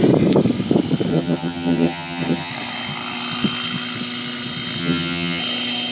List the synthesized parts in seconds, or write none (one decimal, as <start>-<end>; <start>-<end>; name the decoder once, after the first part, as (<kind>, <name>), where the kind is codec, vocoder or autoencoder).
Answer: 1.1-2.5 (vocoder, HiFi-GAN); 4.8-5.4